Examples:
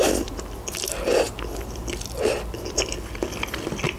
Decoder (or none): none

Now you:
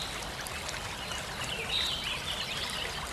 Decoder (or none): none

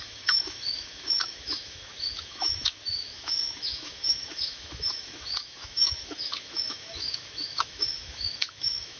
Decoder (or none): autoencoder, DAC-VAE